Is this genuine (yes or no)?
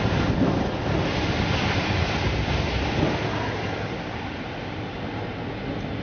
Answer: yes